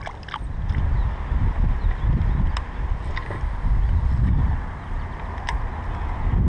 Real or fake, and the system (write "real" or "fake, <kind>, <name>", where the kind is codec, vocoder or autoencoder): real